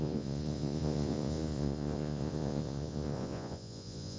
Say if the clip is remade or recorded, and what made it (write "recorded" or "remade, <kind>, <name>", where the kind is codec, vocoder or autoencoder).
remade, vocoder, Vocos